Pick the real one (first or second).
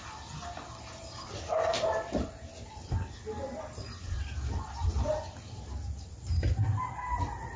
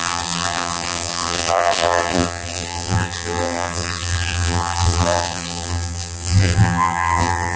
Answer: first